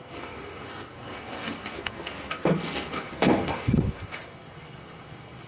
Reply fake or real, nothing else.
fake